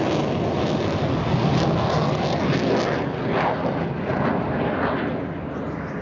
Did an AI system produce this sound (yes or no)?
no